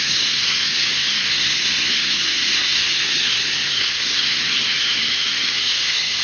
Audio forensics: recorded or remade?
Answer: remade